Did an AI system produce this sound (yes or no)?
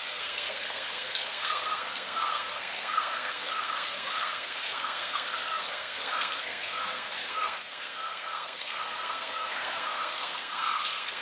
yes